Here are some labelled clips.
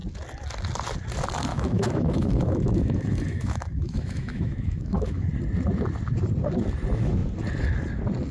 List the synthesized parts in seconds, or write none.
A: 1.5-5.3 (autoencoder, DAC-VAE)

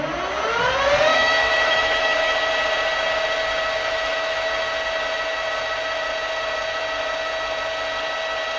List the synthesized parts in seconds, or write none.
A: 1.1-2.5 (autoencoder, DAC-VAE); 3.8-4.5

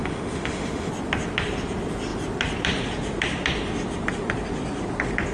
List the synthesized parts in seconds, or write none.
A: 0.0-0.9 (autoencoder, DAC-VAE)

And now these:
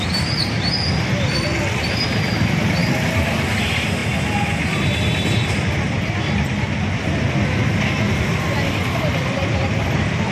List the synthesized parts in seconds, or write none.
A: none

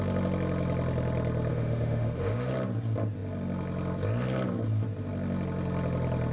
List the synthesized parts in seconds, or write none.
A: 1.5-2.5 (autoencoder, DAC-VAE)